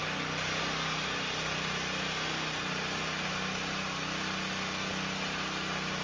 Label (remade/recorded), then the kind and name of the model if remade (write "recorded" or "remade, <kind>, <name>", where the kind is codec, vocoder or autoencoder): recorded